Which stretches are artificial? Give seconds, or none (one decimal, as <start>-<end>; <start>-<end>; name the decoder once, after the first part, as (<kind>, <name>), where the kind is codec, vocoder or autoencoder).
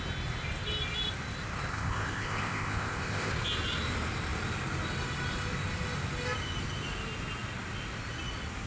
1.7-3.3 (codec, ZipCodec)